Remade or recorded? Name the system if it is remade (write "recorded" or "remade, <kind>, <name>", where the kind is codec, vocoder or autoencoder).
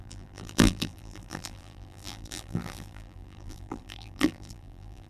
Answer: remade, vocoder, BigVGAN v2